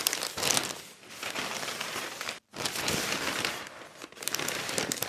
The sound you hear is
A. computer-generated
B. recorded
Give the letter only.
B